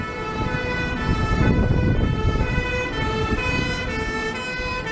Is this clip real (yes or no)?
yes